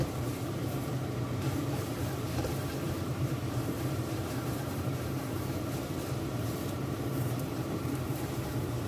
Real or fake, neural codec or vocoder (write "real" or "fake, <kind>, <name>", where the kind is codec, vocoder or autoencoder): fake, vocoder, BigVGAN v2